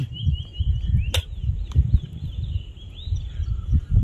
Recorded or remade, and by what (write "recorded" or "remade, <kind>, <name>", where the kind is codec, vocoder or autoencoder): recorded